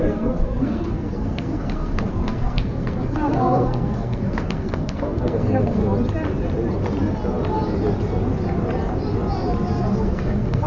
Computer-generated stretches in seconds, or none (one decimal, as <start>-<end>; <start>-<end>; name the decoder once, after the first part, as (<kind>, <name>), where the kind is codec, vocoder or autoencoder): 0.0-5.8 (codec, SNAC); 9.9-10.7